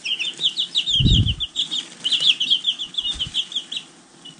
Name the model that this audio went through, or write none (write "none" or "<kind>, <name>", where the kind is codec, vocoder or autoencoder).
none